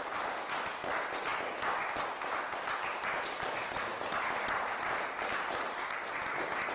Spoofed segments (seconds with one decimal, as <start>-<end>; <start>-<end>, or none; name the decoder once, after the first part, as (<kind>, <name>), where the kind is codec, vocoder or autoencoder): none